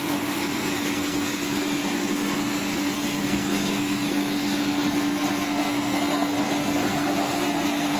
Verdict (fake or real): fake